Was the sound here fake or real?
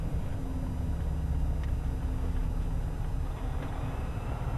real